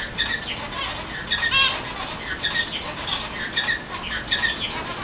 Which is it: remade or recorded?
recorded